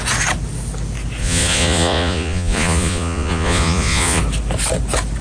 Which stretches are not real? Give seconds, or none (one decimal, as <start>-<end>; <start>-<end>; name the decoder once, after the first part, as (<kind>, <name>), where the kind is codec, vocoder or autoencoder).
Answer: 1.2-4.2 (vocoder, Vocos)